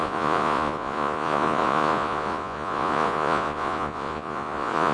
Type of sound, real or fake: fake